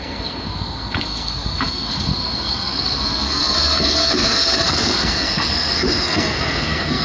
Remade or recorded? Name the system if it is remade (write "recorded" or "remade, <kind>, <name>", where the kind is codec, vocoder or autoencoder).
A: remade, codec, SNAC